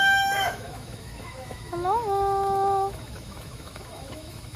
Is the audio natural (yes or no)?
no